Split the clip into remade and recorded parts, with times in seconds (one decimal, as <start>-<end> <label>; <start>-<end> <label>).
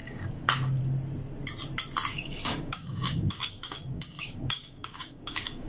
0.0-0.8 remade; 0.8-2.1 recorded; 2.1-5.7 remade